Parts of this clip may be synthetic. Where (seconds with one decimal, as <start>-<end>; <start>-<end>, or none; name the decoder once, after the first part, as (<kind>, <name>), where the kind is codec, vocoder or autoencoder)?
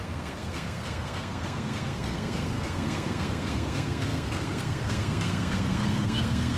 0.0-6.6 (codec, SNAC)